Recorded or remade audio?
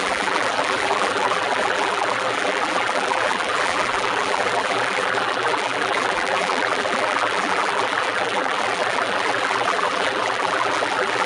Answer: remade